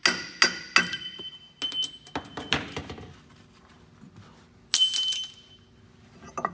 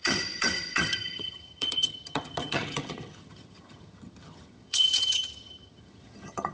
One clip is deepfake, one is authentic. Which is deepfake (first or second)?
second